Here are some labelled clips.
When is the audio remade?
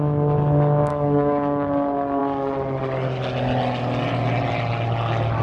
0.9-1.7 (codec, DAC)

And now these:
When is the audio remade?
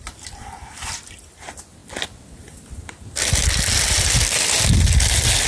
none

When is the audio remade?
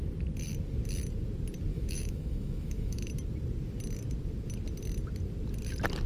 1.7-3.1 (autoencoder, DAC-VAE)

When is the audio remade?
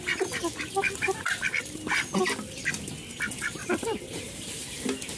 3.6-4.5 (vocoder, BigVGAN v2)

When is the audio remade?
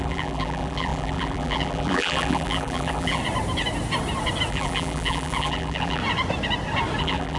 0.0-3.2 (vocoder, BigVGAN v2); 4.5-6.0; 7.0-7.4